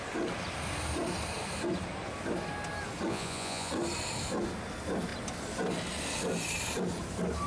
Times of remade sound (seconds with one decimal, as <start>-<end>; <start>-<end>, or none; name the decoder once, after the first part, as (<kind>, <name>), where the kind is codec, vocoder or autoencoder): 3.1-3.7 (vocoder, Vocos)

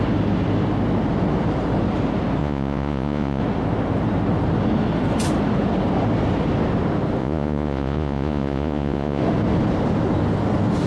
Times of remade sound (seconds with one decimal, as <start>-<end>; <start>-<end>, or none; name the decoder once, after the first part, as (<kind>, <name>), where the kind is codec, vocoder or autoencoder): 2.4-3.4 (vocoder, Vocos); 7.2-9.2

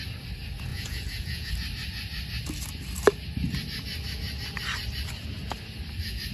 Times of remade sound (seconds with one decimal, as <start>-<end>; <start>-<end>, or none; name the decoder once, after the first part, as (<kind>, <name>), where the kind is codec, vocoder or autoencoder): 0.7-1.5 (vocoder, Vocos)

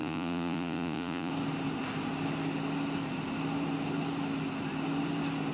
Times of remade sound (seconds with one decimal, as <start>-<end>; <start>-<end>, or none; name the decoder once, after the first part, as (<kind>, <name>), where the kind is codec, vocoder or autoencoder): 0.0-1.3 (vocoder, Vocos)

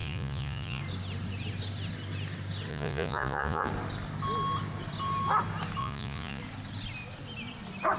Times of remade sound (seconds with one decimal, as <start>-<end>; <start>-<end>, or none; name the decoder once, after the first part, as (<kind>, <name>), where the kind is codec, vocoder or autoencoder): 0.0-0.8 (vocoder, Vocos); 2.7-3.7; 5.8-6.4